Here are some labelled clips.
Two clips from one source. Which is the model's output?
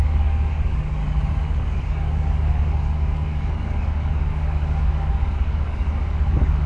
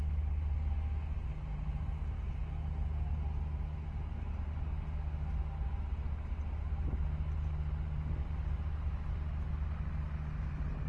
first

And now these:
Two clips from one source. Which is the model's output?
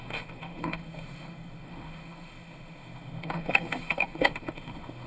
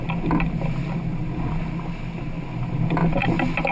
first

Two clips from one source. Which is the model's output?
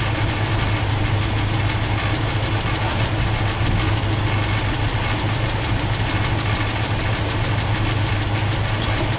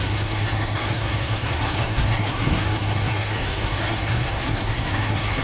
second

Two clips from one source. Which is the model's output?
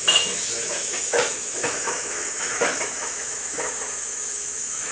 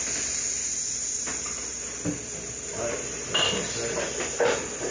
first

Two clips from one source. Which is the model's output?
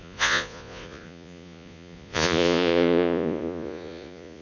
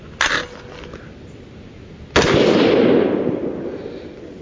first